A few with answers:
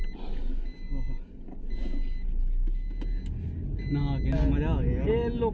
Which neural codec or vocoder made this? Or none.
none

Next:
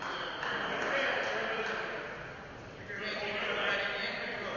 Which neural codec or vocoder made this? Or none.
vocoder, BigVGAN v2